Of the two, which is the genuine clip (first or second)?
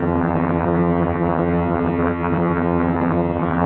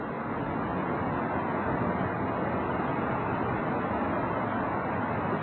second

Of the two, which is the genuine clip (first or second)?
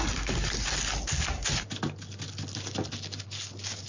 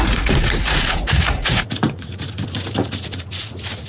first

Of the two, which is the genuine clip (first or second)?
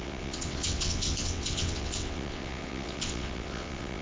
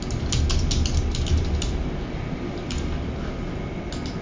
second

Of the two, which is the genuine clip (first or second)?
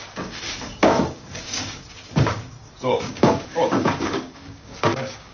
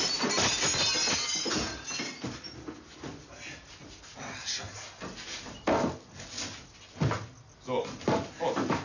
second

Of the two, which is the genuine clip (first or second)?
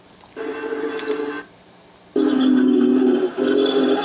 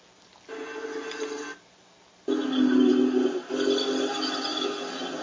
second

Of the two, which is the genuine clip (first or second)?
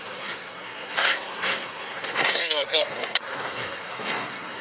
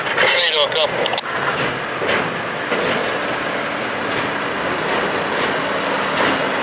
second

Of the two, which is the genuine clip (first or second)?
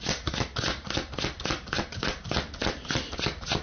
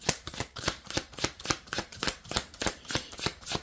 first